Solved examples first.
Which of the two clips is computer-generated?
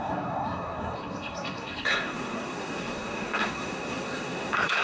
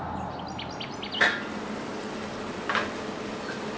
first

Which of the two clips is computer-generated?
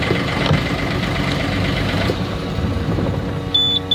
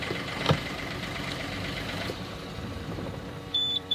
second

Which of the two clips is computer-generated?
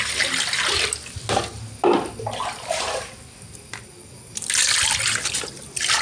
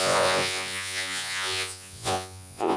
second